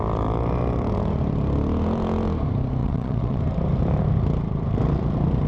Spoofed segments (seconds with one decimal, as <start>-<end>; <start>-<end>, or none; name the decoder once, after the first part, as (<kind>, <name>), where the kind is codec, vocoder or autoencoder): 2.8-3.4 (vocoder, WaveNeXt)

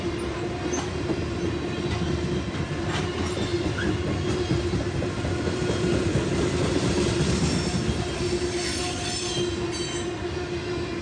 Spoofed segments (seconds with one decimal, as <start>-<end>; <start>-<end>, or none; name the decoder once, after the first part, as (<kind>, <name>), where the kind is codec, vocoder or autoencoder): none

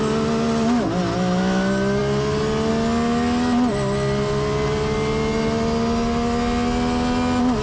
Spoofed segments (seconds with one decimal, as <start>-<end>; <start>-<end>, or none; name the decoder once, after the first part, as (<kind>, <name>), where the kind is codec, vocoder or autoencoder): none

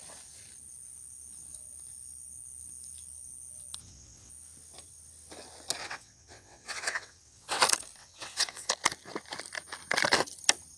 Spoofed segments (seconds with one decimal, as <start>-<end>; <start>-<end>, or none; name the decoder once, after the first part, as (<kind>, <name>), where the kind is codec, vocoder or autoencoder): 3.8-4.3 (vocoder, WaveNeXt); 5.8-7.6; 8.0-8.7

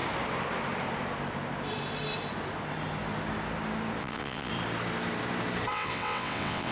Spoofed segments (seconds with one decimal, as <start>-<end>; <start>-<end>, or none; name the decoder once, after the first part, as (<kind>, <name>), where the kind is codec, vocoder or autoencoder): 4.0-4.5 (vocoder, WaveNeXt); 5.7-6.7

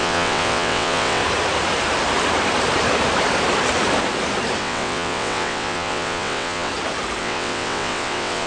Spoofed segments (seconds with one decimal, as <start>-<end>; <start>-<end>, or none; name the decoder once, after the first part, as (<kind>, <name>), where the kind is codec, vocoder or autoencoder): 0.0-1.2 (vocoder, WaveNeXt); 4.6-6.7; 7.2-8.5

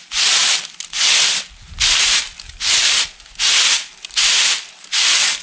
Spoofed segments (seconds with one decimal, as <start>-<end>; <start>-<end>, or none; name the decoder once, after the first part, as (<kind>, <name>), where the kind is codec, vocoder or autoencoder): none

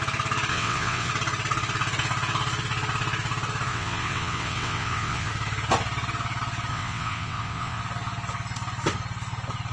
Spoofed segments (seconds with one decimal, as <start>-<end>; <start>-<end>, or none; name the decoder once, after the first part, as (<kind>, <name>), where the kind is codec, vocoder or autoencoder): 0.5-1.1 (vocoder, WaveNeXt); 3.7-5.3; 6.7-7.8